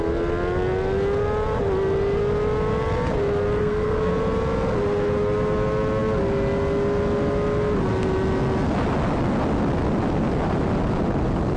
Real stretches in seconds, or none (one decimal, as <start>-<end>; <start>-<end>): 0.0-3.6; 4.1-11.6